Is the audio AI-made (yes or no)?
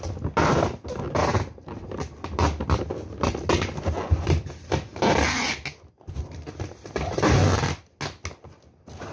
no